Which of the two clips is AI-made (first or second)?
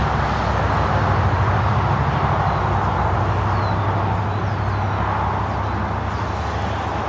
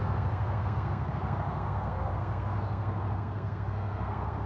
second